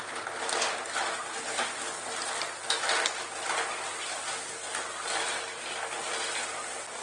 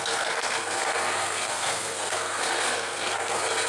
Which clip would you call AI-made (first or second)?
second